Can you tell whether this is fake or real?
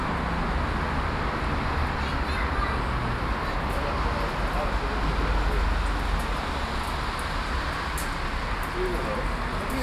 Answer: real